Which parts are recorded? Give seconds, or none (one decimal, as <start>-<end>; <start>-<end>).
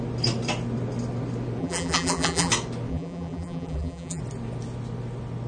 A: 0.0-1.6; 2.5-2.9; 4.2-5.5